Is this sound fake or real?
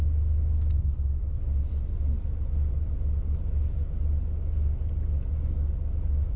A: real